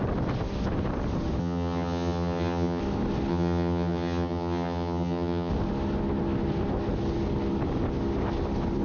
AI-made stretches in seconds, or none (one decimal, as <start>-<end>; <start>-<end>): 1.4-2.8; 3.3-5.5